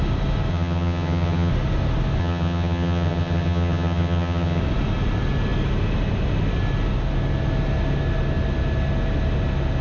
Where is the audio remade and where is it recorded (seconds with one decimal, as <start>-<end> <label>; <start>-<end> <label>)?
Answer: 0.0-0.5 recorded; 0.5-1.5 remade; 1.5-2.2 recorded; 2.2-4.6 remade; 4.6-9.8 recorded